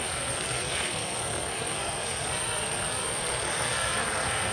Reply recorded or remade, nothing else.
remade